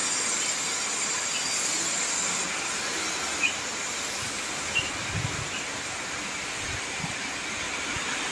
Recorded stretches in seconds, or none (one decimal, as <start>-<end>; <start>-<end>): 0.0-8.3